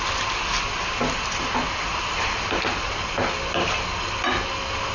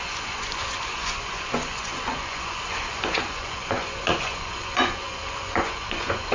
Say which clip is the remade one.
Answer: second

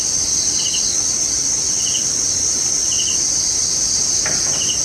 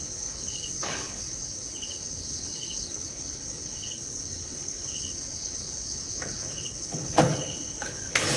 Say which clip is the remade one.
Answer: second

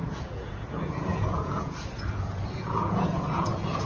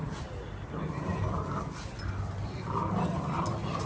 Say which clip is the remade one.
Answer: first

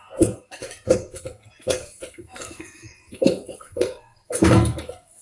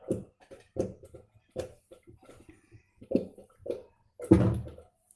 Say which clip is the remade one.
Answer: first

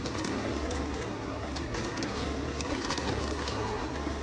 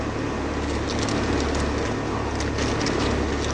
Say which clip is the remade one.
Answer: first